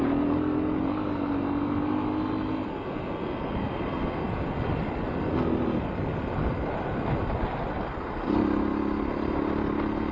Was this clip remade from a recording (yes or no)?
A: no